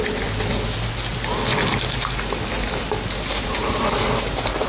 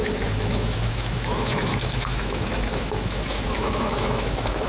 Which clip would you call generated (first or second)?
second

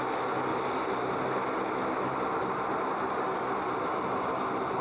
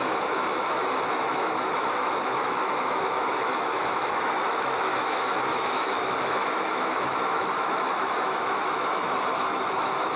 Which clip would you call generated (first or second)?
second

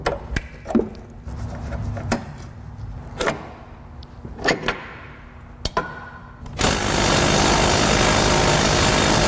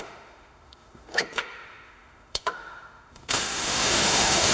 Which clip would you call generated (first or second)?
second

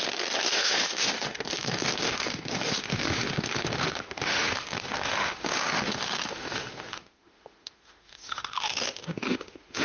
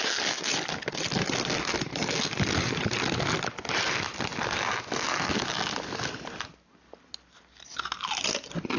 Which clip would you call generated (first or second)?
first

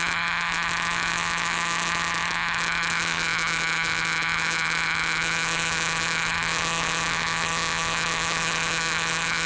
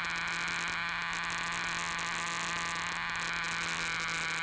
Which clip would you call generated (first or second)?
first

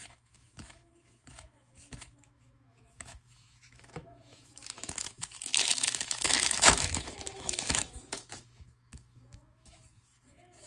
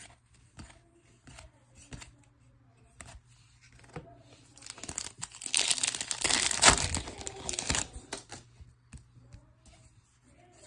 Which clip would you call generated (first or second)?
first